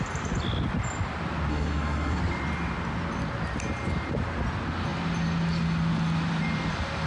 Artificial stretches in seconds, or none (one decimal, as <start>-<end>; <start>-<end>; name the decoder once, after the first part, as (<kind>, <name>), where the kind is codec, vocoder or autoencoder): 1.5-2.2 (codec, SNAC)